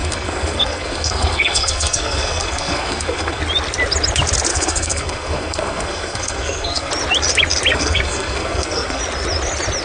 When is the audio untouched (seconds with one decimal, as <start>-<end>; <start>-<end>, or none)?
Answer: 3.4-4.5; 6.9-7.7; 9.0-9.8